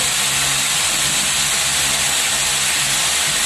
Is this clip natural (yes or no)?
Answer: yes